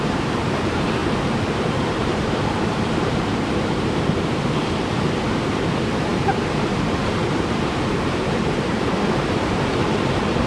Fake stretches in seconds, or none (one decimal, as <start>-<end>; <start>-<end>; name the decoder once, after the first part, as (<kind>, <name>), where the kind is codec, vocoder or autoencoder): 0.0-9.8 (vocoder, BigVGAN v2)